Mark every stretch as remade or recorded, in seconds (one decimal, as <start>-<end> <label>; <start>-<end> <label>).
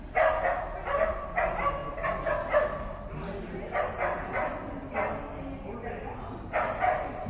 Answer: 0.0-7.3 recorded